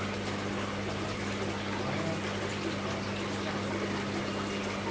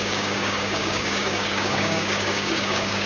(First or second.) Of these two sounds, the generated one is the second